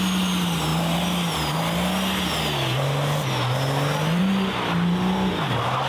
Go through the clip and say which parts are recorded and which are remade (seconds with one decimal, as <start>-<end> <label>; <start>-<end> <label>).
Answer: 0.0-5.9 recorded